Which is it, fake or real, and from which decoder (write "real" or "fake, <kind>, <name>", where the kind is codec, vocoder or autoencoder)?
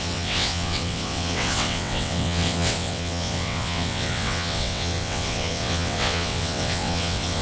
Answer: fake, vocoder, WaveNeXt